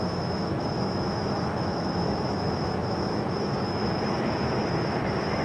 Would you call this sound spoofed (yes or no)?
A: yes